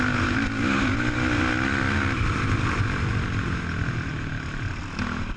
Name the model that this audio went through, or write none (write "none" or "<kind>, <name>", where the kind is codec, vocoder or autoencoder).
none